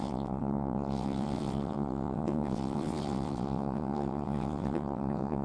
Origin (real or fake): fake